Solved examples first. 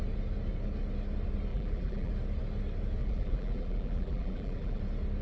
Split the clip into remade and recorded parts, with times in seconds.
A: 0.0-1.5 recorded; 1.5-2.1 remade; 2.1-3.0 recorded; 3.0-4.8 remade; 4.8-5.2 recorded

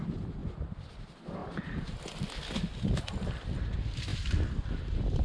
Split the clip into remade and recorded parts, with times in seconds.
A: 0.0-0.4 recorded; 0.4-0.9 remade; 0.9-1.4 recorded; 1.4-3.0 remade; 3.0-5.2 recorded

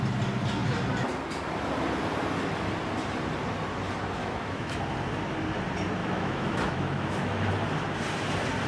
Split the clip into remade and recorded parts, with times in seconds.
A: 0.0-4.2 recorded; 4.2-4.8 remade; 4.8-6.0 recorded; 6.0-7.5 remade; 7.5-8.7 recorded

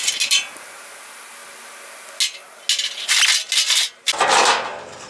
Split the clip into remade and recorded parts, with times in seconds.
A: 0.0-5.1 recorded

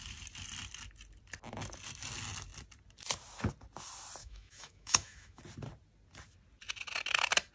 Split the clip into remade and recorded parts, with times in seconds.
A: 0.0-4.2 recorded; 4.2-5.4 remade; 5.4-7.5 recorded

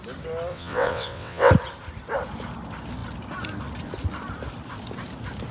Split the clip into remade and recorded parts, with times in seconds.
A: 0.0-0.5 recorded; 0.5-1.5 remade; 1.5-5.5 recorded

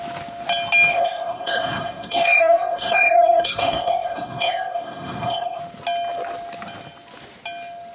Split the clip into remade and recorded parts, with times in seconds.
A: 0.0-0.9 recorded; 0.9-5.6 remade; 5.6-7.9 recorded

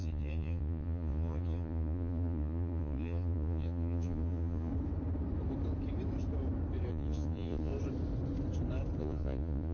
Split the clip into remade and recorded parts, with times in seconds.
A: 0.0-4.7 remade; 4.7-6.9 recorded; 6.9-7.7 remade; 7.7-9.0 recorded; 9.0-9.7 remade